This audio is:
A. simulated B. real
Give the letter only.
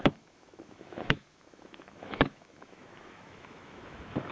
A